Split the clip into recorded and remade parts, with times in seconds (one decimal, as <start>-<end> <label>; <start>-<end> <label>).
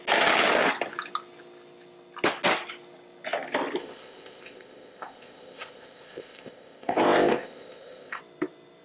0.0-3.8 recorded; 3.8-8.2 remade; 8.2-8.8 recorded